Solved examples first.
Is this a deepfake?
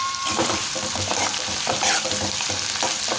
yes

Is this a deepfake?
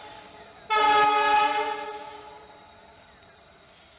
no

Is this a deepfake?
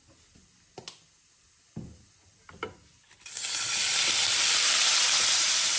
no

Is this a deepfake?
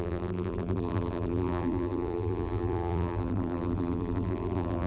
yes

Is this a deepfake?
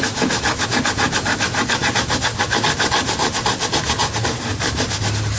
no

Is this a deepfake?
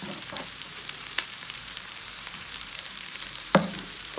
yes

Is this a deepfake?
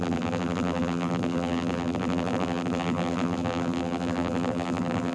yes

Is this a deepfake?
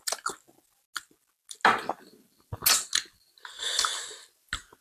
no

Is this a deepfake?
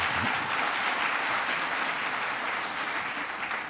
no